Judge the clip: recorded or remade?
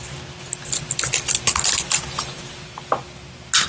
recorded